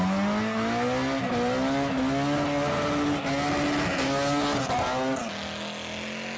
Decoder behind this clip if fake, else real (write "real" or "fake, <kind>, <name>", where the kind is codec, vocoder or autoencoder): real